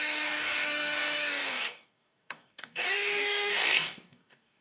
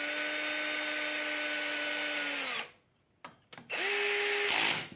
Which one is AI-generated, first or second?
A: first